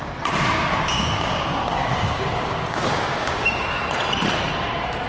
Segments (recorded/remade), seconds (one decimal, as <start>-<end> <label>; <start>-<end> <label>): 0.0-0.7 recorded; 0.7-3.8 remade; 3.8-5.1 recorded